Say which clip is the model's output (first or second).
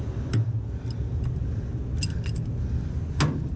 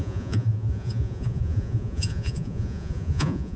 second